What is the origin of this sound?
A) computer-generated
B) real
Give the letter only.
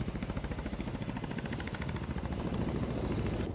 B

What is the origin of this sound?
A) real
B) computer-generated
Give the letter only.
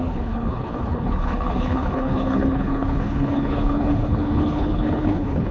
B